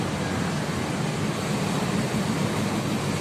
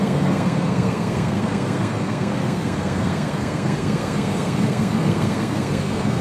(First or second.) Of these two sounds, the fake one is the second